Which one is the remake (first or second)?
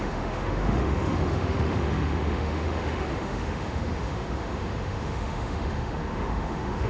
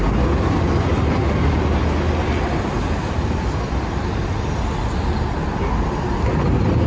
first